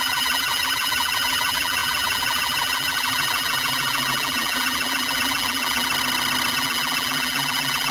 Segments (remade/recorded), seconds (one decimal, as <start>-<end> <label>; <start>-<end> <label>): 0.0-5.9 remade; 5.9-6.5 recorded; 6.5-7.9 remade